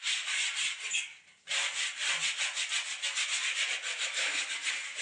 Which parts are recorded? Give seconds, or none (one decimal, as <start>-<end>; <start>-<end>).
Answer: 0.0-3.9; 4.5-5.0